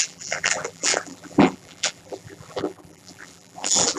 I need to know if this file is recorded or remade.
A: remade